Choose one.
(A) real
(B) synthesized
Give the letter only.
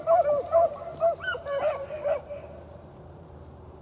B